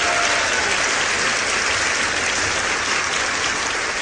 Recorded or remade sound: recorded